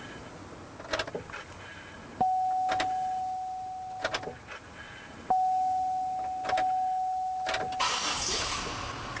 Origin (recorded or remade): recorded